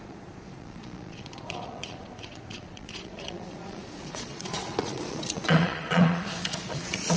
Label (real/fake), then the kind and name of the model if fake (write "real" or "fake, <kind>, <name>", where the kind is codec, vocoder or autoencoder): fake, vocoder, Vocos